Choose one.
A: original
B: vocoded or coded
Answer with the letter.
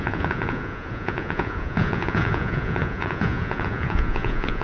B